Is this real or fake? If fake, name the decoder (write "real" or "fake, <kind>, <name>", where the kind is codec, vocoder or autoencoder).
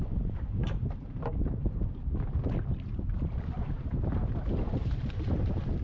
fake, vocoder, BigVGAN v2